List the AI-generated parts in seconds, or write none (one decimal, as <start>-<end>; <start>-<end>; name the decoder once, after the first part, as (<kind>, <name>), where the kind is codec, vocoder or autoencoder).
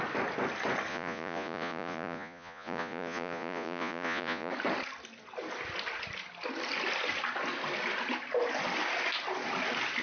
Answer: 0.9-4.5 (vocoder, Vocos)